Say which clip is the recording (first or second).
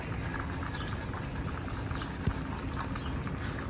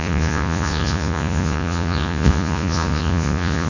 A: first